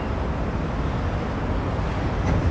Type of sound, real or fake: real